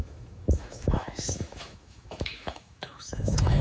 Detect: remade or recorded remade